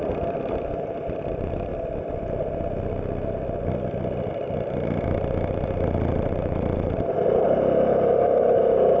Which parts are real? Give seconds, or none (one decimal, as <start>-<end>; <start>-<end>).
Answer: 1.7-4.3